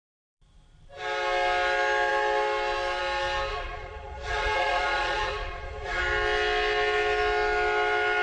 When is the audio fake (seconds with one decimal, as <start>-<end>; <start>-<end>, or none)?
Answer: 3.5-6.0